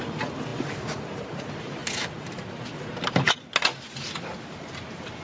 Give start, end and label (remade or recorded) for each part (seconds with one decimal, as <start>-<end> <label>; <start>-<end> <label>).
0.0-5.2 recorded